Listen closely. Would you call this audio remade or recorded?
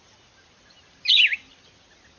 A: recorded